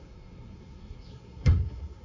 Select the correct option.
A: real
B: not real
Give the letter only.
B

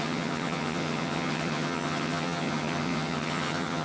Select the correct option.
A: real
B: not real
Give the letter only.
B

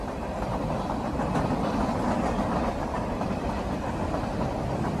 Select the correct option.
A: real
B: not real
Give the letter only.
A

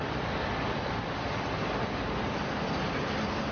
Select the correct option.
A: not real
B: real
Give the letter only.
B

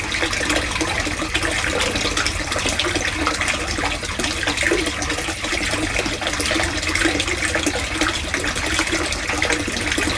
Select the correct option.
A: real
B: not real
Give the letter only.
A